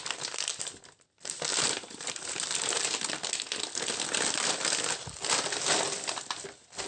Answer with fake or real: real